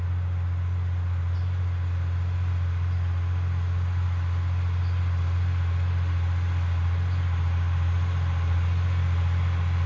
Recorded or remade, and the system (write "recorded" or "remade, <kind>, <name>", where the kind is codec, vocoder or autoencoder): recorded